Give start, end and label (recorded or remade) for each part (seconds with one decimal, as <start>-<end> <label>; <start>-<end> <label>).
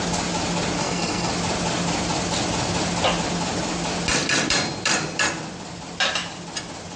0.0-0.8 recorded; 0.8-1.3 remade; 1.3-7.0 recorded